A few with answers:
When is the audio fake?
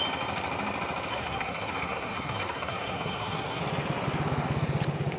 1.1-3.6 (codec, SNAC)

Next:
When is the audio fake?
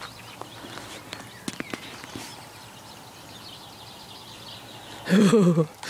none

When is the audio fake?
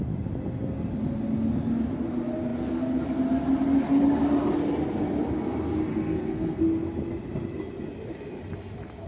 5.9-6.6 (codec, SNAC)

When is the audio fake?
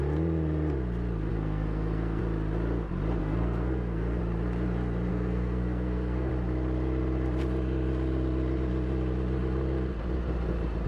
1.3-2.2 (codec, SNAC); 3.2-4.2; 5.1-6.3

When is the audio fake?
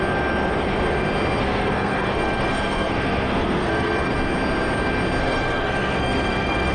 1.4-4.1 (codec, SNAC); 5.2-6.7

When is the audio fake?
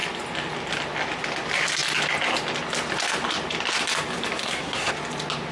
4.4-4.9 (codec, SNAC)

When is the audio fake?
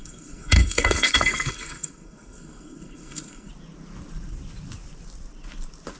0.0-3.5 (codec, SNAC)